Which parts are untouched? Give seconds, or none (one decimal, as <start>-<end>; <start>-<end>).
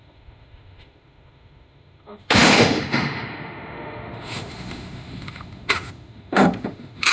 none